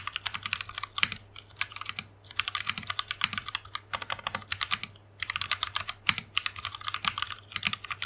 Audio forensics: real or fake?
real